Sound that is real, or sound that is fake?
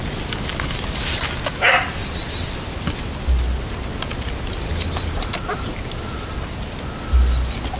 real